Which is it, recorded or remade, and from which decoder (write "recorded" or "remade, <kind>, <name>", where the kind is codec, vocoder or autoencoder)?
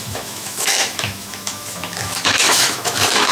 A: remade, autoencoder, DAC-VAE